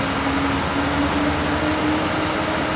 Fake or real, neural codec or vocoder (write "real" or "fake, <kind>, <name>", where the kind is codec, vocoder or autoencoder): real